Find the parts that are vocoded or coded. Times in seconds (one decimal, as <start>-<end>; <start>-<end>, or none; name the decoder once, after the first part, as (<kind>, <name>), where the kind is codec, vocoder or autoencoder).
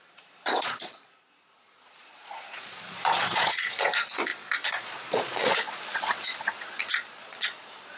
0.0-8.0 (vocoder, Vocos)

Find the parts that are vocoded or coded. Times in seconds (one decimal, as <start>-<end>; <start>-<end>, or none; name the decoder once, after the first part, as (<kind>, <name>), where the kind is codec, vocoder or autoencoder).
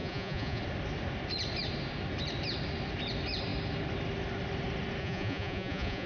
0.0-0.6 (vocoder, Vocos); 5.0-6.1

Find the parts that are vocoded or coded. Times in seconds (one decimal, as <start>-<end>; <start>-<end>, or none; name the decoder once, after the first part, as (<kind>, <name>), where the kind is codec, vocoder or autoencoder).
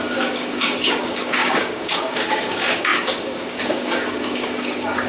0.0-5.1 (codec, DAC)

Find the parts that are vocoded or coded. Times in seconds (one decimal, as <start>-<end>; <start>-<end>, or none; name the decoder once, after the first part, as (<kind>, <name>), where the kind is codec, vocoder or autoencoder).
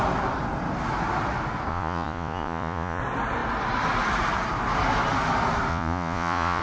1.7-3.0 (vocoder, Vocos); 5.7-6.6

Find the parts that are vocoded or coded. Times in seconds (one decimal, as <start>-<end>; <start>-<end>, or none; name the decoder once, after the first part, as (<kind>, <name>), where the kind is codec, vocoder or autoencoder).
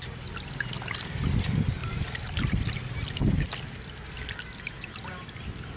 none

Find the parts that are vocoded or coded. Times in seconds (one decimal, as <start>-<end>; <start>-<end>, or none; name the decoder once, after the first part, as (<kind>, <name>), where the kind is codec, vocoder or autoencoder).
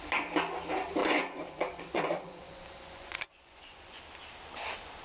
1.0-4.0 (vocoder, Vocos)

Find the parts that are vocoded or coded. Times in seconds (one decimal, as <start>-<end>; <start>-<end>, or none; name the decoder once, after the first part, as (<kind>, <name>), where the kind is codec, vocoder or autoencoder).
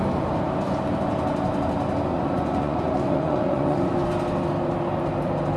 2.1-4.1 (vocoder, Vocos)